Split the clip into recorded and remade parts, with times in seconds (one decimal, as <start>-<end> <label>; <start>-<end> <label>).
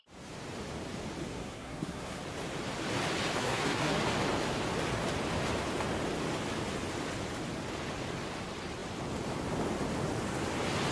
0.0-1.3 recorded; 1.3-2.2 remade; 2.2-3.4 recorded; 3.4-4.0 remade; 4.0-10.9 recorded